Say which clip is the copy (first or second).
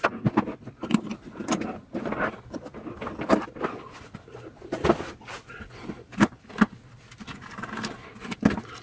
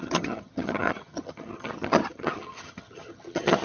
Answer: second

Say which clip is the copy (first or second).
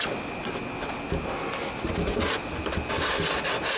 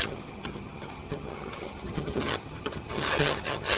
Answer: second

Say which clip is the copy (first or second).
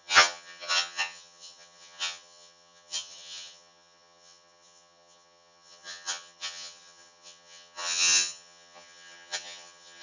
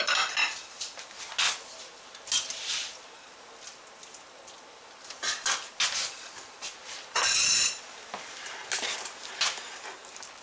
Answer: first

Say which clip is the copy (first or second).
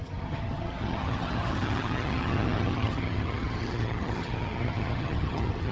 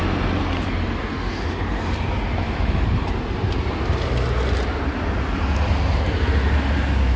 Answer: first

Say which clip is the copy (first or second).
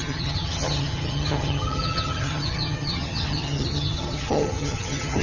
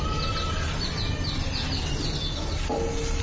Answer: first